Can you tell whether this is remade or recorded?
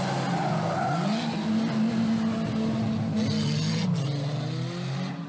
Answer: recorded